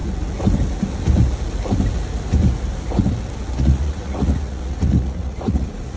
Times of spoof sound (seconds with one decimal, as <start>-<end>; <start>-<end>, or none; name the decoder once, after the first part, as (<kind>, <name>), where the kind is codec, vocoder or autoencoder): 3.6-6.0 (vocoder, Vocos)